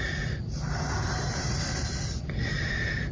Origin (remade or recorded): recorded